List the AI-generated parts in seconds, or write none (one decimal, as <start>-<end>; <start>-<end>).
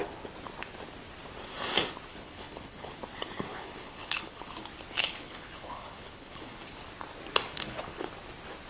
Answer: 2.1-3.0; 3.5-4.5; 5.0-6.8; 7.5-8.1